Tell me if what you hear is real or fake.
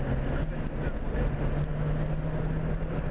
real